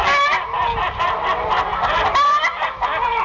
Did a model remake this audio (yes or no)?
no